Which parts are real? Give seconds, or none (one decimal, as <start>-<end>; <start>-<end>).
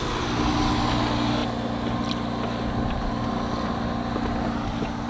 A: 0.0-5.1